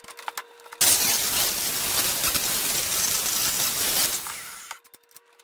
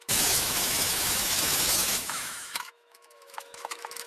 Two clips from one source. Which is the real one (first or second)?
first